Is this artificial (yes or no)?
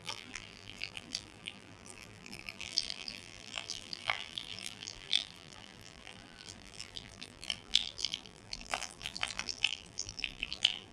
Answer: yes